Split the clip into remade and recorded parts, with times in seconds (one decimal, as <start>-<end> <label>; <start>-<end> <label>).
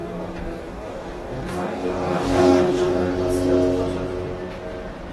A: 0.0-3.1 remade; 3.1-5.1 recorded